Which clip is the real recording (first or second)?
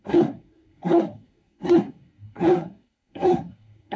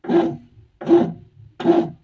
second